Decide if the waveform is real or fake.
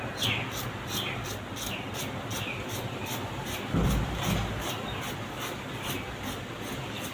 real